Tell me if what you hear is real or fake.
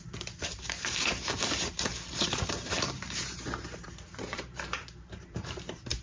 fake